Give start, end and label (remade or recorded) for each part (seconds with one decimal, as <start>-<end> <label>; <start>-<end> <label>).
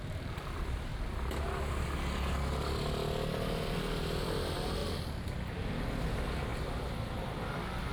0.0-0.9 remade; 0.9-4.2 recorded; 4.2-4.8 remade; 4.8-6.0 recorded; 6.0-6.5 remade; 6.5-7.9 recorded